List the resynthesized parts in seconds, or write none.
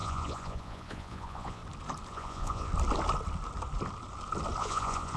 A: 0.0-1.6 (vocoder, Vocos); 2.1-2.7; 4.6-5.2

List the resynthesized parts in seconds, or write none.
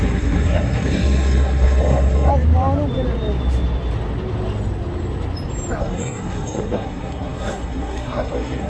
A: 0.0-2.3 (codec, SNAC); 5.8-8.7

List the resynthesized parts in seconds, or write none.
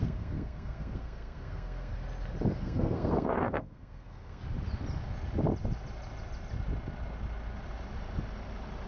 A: 0.0-1.9 (codec, SNAC); 2.5-4.4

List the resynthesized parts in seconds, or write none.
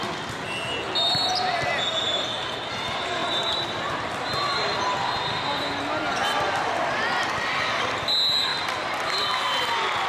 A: 3.2-3.9 (vocoder, BigVGAN v2); 8.5-9.4